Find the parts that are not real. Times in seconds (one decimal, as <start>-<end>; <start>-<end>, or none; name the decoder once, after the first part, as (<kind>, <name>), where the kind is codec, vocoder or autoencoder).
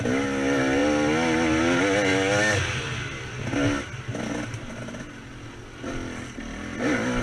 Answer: none